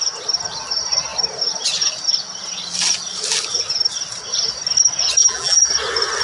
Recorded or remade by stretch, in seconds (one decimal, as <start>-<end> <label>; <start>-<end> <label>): 0.0-5.2 recorded; 5.2-5.7 remade; 5.7-6.2 recorded